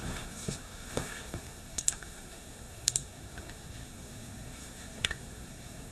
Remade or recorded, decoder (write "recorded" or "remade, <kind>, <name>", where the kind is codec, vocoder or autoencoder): remade, codec, SNAC